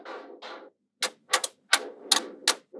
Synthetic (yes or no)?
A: no